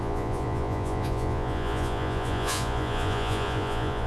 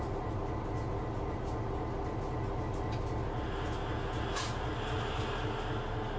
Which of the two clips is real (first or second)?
second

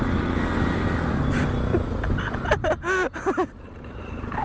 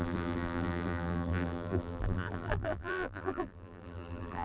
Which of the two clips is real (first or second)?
first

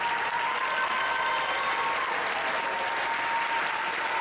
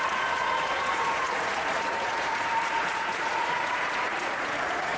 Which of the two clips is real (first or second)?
first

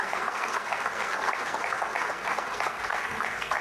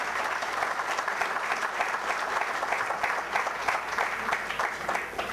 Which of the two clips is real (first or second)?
second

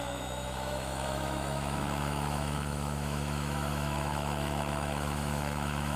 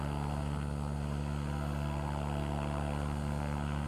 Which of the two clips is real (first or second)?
second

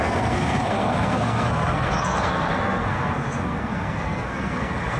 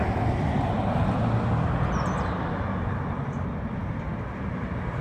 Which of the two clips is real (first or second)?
second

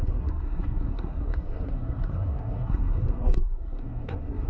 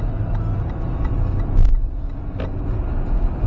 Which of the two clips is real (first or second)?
second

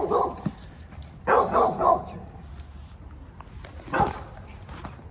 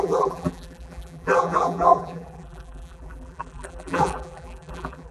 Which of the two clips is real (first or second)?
first